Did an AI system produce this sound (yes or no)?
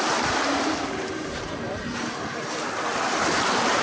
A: no